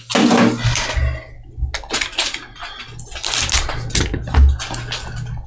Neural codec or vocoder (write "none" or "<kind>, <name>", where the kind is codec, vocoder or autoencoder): none